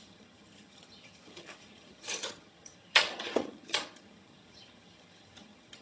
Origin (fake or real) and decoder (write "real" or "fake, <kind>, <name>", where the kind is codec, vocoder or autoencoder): fake, vocoder, HiFi-GAN